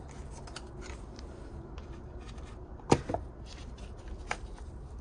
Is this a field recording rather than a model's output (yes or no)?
yes